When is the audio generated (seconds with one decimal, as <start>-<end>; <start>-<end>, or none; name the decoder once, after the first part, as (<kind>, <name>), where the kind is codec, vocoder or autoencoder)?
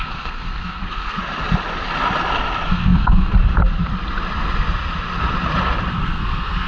0.0-1.2 (codec, SNAC); 2.7-3.3; 5.9-6.7